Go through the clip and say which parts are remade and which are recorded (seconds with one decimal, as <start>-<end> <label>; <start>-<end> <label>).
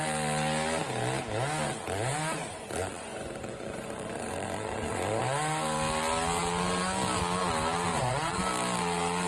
0.0-2.1 recorded; 2.1-5.2 remade; 5.2-7.9 recorded; 7.9-8.4 remade; 8.4-9.3 recorded